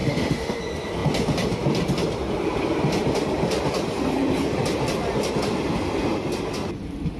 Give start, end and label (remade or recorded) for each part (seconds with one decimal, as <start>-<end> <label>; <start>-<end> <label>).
0.0-0.6 remade; 0.6-7.2 recorded